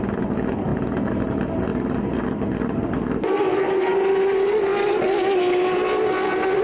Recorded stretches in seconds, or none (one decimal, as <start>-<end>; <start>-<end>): 0.0-6.6